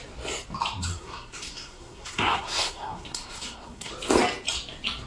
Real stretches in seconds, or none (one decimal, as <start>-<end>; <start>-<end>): 0.0-0.9; 3.9-5.1